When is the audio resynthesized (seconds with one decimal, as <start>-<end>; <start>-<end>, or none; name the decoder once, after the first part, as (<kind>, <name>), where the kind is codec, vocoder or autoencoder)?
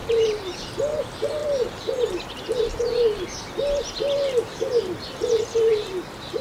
0.0-0.6 (vocoder, BigVGAN v2); 5.7-6.4